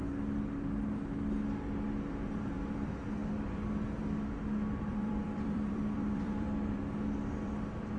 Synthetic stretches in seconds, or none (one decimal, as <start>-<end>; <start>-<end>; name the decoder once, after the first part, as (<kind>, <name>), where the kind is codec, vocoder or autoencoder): 2.1-3.2 (vocoder, BigVGAN v2); 4.8-8.0